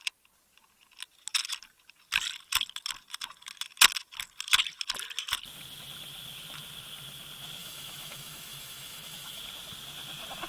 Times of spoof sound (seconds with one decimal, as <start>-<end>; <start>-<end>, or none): 7.6-9.4